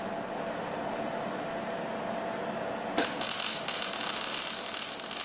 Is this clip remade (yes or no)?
no